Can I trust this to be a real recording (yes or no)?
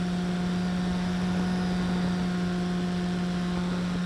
yes